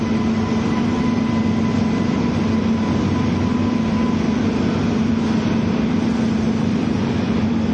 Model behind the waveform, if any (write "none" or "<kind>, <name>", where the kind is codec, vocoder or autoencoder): vocoder, BigVGAN v2